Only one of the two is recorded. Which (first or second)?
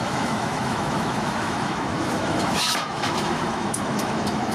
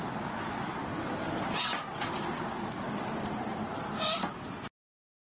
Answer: second